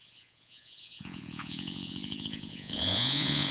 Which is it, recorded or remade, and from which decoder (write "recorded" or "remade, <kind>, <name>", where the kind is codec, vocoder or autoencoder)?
remade, vocoder, Vocos